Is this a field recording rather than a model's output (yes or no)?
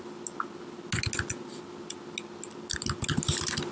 yes